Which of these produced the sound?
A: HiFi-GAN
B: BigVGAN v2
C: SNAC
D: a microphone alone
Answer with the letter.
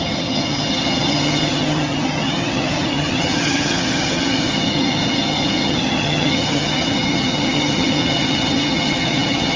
A